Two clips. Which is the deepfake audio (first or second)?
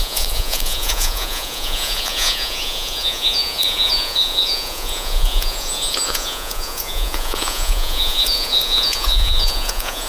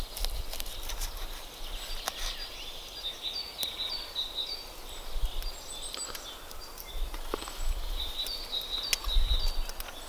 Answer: first